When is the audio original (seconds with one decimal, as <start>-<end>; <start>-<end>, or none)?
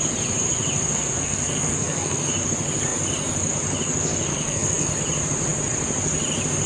0.0-0.9; 2.3-4.3; 4.9-6.7